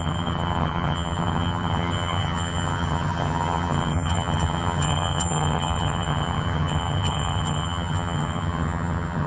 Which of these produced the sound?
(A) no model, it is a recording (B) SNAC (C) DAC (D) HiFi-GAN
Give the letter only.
D